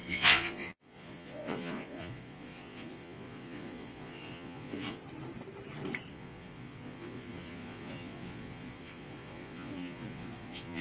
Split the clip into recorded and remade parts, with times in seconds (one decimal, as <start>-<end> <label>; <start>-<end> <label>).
0.0-5.0 remade; 5.0-6.1 recorded; 6.1-10.8 remade